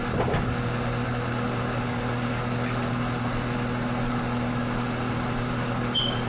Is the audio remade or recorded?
recorded